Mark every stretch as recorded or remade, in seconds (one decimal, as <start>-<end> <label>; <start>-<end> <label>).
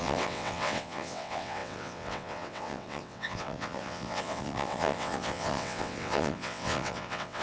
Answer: 0.0-7.4 remade